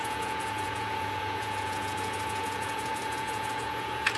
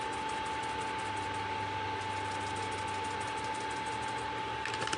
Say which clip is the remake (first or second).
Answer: first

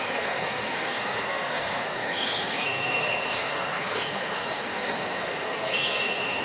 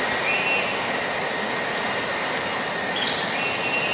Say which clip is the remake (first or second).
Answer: first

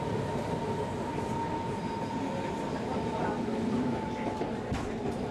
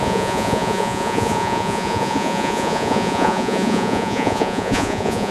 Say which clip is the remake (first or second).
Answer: second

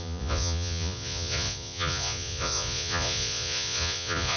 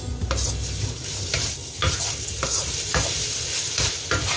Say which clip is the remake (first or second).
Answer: first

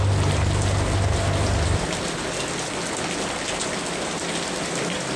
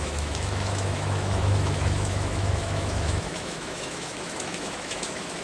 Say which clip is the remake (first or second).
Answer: second